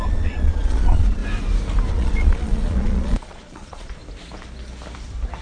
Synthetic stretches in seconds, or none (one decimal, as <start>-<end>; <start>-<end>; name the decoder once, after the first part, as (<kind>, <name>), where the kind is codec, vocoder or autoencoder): 0.0-1.2 (vocoder, Vocos); 1.9-4.0